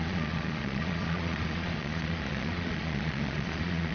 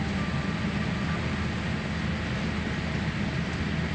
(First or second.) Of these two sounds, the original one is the second